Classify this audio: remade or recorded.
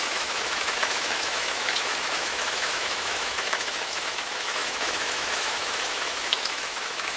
remade